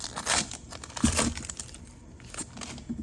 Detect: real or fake real